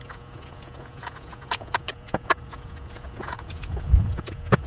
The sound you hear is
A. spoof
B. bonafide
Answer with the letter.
A